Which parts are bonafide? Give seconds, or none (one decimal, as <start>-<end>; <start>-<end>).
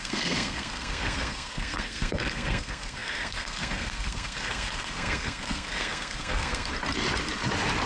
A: 6.7-7.9